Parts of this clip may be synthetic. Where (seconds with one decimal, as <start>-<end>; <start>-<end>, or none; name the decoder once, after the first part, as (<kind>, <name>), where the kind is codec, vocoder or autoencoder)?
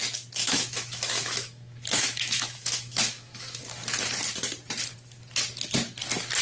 0.4-3.6 (autoencoder, DAC-VAE)